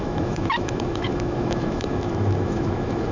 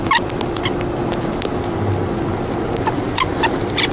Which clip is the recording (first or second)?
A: second